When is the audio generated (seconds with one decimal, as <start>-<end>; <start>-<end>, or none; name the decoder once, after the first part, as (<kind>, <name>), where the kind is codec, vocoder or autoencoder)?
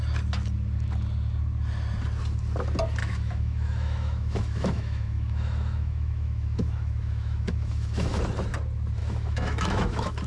3.0-8.2 (autoencoder, DAC-VAE); 9.0-10.3